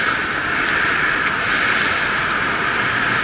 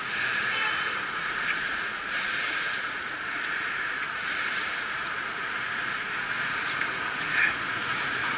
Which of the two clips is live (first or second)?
first